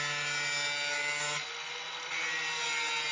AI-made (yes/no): no